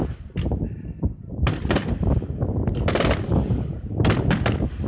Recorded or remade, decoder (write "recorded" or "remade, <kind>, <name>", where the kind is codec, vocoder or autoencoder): remade, vocoder, BigVGAN v2